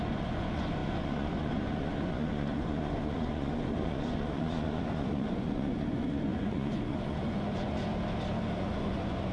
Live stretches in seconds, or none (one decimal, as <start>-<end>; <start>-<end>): 7.9-8.6